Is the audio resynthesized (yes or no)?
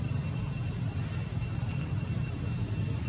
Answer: no